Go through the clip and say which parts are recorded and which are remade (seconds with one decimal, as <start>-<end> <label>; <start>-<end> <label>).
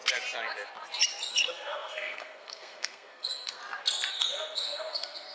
0.0-1.3 recorded; 1.3-3.6 remade; 3.6-4.1 recorded; 4.1-5.3 remade